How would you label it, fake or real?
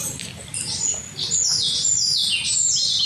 real